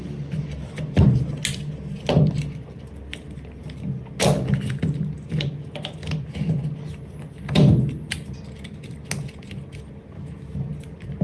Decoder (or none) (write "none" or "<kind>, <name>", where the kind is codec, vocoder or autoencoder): none